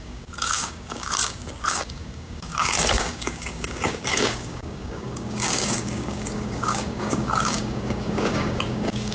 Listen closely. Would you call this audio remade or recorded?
remade